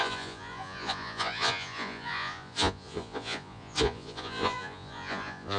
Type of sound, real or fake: fake